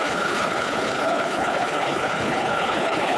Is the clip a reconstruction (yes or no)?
yes